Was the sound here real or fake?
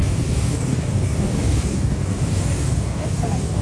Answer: fake